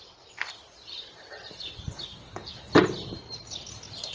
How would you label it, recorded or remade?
recorded